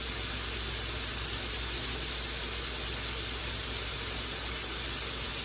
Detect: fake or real real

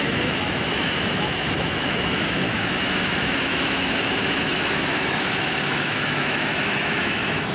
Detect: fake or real fake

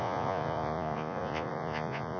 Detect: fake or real fake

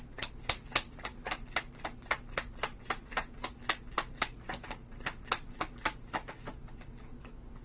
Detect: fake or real real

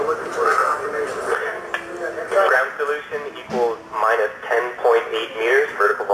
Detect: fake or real real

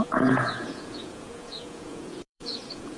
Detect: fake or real fake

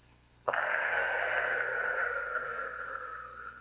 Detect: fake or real fake